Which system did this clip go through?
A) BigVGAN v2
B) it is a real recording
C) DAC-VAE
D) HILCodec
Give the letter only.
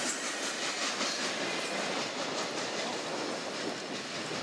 B